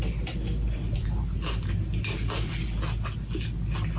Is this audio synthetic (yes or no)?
no